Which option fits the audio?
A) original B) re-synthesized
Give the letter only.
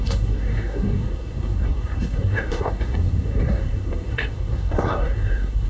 B